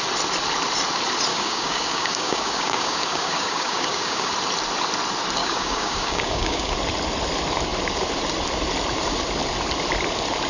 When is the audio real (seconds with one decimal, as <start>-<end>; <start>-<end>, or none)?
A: 0.0-1.3; 4.3-5.4; 6.7-10.5